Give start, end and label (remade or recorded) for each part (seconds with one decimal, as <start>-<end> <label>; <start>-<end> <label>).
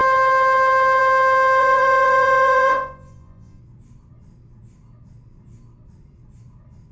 0.0-1.6 recorded; 1.6-3.6 remade; 3.6-6.9 recorded